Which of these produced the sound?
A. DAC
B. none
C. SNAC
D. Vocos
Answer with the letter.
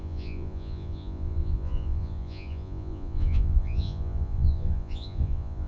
D